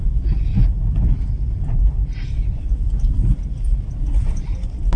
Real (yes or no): yes